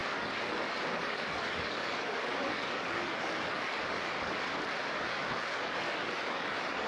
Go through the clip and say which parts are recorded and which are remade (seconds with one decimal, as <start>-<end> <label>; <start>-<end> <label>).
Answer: 0.0-4.1 remade; 4.1-4.8 recorded; 4.8-6.9 remade